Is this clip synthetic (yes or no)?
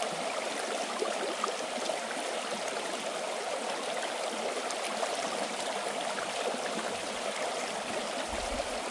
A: no